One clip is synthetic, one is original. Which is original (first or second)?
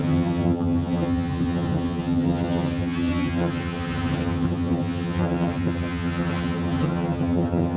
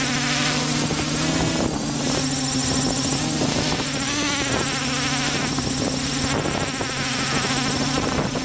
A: second